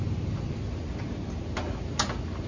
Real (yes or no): yes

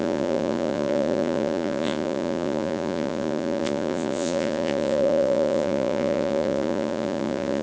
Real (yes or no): no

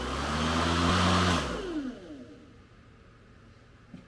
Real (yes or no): yes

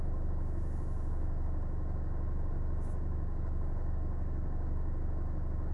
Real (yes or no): yes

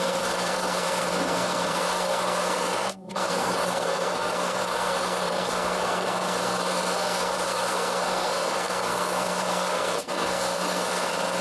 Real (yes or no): no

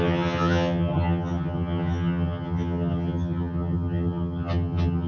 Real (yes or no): no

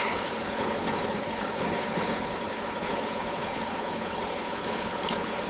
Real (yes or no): no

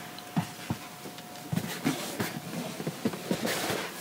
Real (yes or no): yes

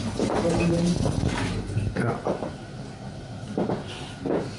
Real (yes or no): yes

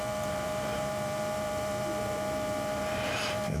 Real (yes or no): no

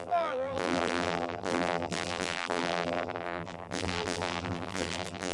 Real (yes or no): no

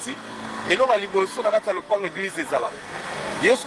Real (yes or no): no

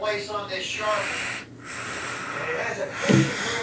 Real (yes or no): yes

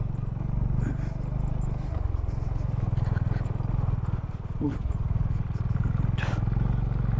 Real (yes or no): yes